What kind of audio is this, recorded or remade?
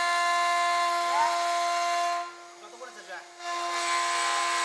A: recorded